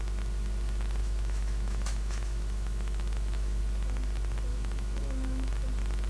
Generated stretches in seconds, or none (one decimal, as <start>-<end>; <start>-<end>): 1.0-3.6; 4.5-5.5